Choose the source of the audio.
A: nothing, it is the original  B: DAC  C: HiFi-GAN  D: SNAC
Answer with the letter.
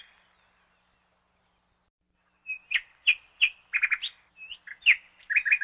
A